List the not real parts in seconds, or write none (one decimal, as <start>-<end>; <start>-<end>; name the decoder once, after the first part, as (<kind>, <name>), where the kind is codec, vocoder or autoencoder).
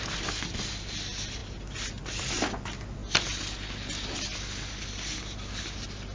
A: none